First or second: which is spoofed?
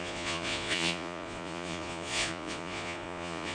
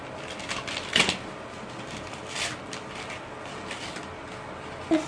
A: first